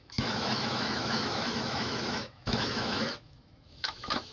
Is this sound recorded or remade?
remade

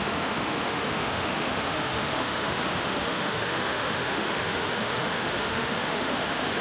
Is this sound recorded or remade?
remade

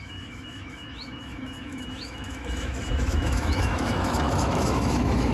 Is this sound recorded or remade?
remade